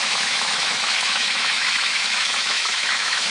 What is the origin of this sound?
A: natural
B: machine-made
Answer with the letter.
B